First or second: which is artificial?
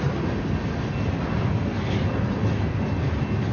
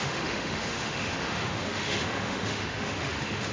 second